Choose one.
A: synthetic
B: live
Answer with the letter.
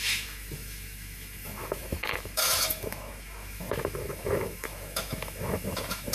A